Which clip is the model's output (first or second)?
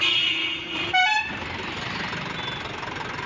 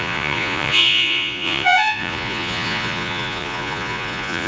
second